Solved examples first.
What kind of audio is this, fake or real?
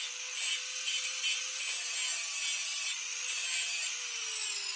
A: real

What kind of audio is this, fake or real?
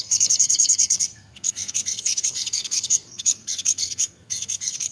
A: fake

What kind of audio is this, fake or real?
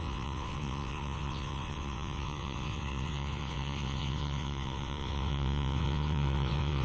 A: fake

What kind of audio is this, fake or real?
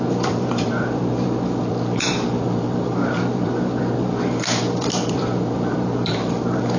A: fake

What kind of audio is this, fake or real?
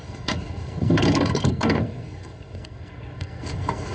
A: fake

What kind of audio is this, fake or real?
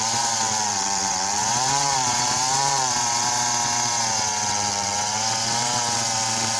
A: fake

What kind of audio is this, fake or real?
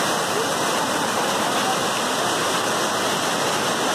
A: real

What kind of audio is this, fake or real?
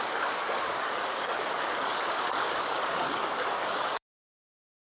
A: fake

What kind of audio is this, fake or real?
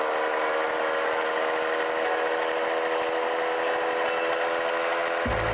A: real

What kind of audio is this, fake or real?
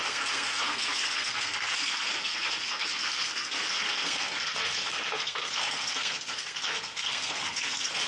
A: fake